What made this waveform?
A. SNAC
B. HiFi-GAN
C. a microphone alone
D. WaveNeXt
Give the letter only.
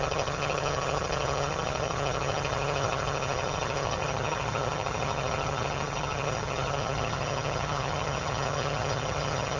B